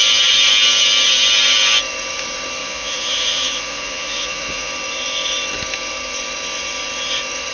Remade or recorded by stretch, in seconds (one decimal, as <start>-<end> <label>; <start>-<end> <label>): 0.0-2.6 recorded; 2.6-4.7 remade; 4.7-7.5 recorded